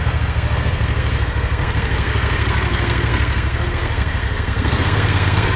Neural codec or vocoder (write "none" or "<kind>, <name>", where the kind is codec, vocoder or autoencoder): codec, SNAC